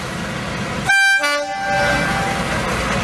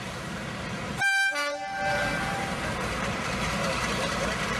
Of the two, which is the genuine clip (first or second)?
first